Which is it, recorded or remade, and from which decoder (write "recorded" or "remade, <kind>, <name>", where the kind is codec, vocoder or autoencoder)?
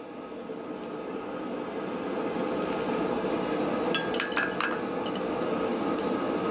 recorded